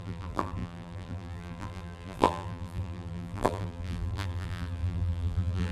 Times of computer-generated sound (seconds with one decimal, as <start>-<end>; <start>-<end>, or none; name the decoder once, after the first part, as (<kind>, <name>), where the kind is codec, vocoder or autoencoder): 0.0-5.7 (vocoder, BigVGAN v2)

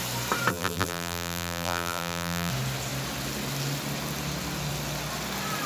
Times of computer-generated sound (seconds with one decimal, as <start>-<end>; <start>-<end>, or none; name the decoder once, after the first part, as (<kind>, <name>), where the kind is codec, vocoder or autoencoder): 0.5-2.5 (vocoder, BigVGAN v2)

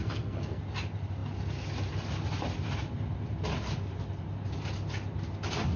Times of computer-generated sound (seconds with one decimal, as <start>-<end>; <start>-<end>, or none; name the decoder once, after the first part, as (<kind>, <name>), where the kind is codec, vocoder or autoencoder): 0.0-0.6 (codec, SNAC)

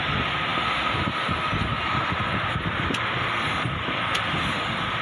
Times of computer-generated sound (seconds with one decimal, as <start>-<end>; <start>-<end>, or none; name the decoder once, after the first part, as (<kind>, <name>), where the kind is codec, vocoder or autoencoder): none

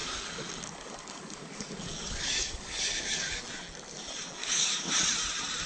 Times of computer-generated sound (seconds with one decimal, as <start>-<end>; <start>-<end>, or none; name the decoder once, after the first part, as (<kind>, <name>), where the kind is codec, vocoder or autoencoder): 0.0-3.4 (codec, DAC); 4.4-4.9